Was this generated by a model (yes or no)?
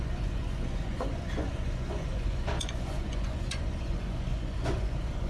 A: yes